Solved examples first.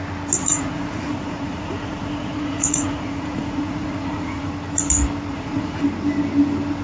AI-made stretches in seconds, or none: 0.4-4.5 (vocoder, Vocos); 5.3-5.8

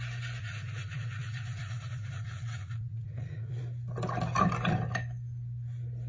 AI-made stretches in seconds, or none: 0.4-3.6 (vocoder, Vocos)

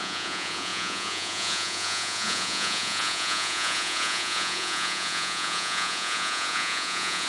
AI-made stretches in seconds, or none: 0.0-7.3 (vocoder, Vocos)

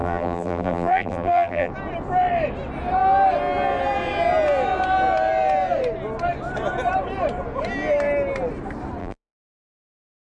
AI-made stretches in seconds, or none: 0.0-1.7 (vocoder, BigVGAN v2); 9.0-9.5

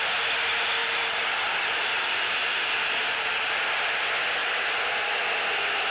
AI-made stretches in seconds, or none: 0.8-4.0 (vocoder, BigVGAN v2); 4.4-5.2

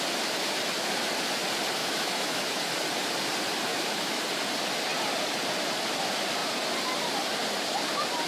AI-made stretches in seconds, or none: 1.8-2.7 (autoencoder, DAC-VAE); 3.7-4.2

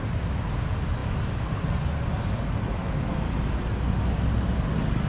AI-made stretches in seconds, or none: none